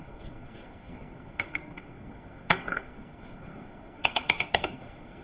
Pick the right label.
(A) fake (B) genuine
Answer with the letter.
A